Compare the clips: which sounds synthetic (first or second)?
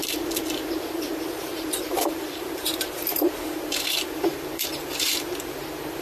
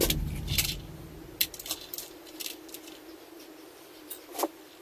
first